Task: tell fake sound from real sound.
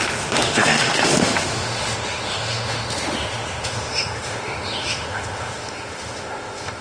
fake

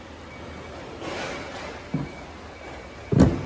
real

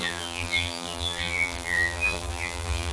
fake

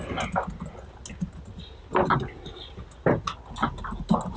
real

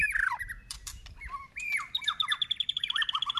fake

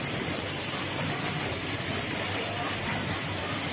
fake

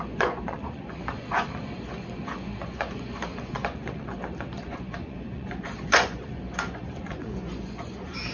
fake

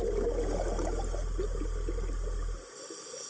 real